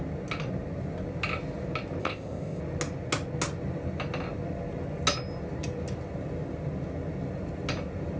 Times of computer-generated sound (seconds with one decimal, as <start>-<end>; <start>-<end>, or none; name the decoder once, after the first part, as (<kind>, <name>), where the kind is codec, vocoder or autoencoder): 2.0-2.6 (codec, ZipCodec)